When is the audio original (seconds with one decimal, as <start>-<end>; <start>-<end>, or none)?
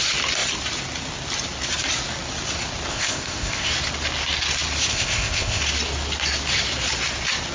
0.0-2.9; 3.7-4.9; 5.6-7.5